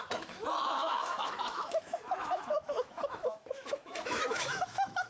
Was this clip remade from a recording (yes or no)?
yes